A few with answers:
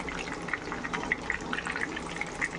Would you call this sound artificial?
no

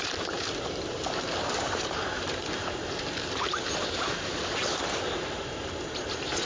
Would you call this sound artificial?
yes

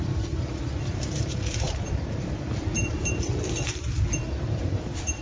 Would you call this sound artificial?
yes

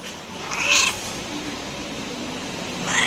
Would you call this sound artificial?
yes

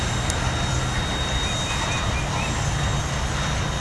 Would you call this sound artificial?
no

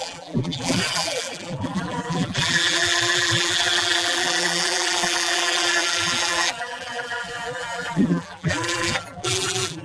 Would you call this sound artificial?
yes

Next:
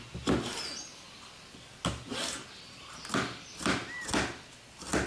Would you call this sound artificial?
no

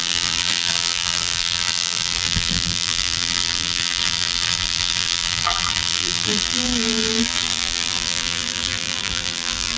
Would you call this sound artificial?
yes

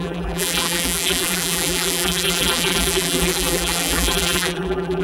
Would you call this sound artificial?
yes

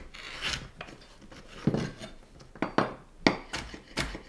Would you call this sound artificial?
no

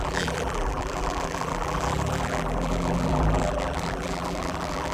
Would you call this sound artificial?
yes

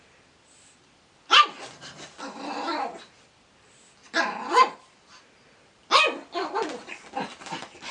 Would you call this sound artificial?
yes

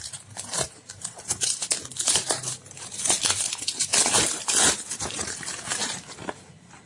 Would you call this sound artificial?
yes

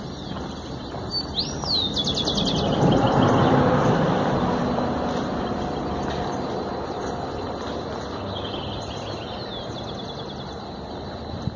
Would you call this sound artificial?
no